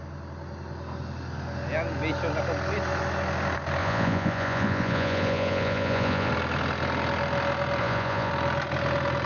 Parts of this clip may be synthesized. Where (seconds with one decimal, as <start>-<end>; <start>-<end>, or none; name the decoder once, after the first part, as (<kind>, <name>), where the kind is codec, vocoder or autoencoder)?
3.8-6.3 (vocoder, Vocos); 7.8-8.3